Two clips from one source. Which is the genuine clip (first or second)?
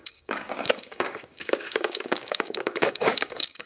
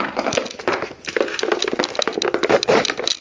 second